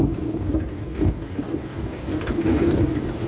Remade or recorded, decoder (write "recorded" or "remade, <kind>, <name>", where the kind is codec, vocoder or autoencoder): remade, codec, DAC